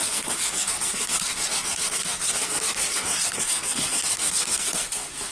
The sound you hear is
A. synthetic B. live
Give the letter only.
A